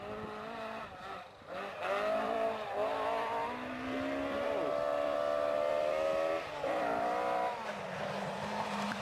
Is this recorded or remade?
remade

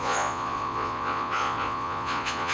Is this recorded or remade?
remade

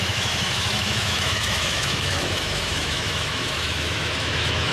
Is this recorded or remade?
remade